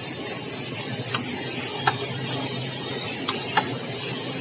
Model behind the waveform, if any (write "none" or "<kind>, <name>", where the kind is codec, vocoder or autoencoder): none